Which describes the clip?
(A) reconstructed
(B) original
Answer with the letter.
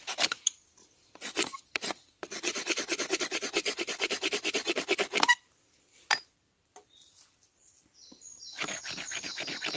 A